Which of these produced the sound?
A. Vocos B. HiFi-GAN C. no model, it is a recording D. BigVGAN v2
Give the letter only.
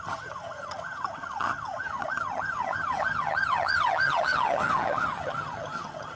B